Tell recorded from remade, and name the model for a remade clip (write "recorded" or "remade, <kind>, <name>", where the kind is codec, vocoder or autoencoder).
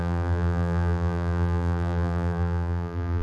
remade, vocoder, BigVGAN v2